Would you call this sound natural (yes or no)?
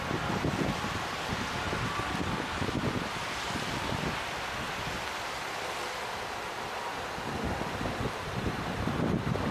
yes